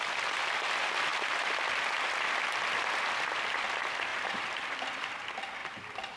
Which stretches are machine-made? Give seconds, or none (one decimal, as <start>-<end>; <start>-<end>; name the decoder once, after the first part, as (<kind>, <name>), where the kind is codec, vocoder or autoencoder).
4.1-4.7 (vocoder, BigVGAN v2); 5.6-6.2